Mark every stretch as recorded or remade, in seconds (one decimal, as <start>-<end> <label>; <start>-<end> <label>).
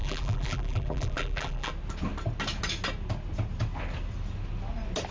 0.0-1.7 remade; 1.7-5.1 recorded